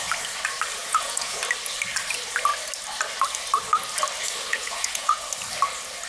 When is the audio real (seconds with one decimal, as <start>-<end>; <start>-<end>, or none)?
0.0-0.8; 1.4-4.5; 5.2-6.1